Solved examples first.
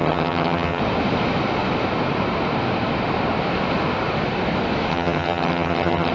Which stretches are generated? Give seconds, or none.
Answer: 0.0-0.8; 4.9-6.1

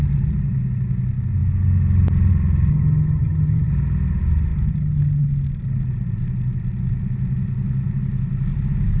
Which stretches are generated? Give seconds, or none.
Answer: 2.7-3.7